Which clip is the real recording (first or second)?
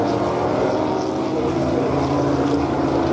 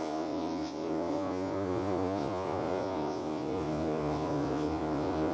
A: first